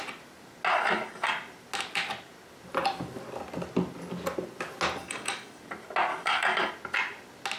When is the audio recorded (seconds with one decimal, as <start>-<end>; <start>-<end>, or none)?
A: 0.0-0.7; 1.3-5.0; 5.6-6.1; 6.7-7.6